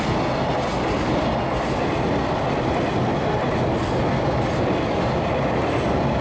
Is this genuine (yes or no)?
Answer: yes